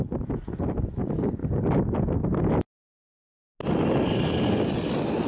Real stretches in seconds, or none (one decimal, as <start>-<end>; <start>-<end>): 0.0-5.3